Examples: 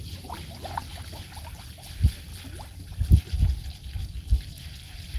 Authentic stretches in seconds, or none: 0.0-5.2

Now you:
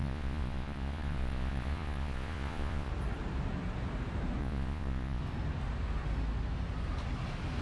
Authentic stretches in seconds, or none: 2.9-4.4; 5.2-7.6